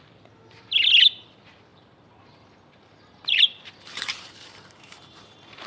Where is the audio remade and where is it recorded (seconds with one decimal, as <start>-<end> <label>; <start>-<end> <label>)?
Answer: 0.0-1.7 recorded; 1.7-5.1 remade; 5.1-5.7 recorded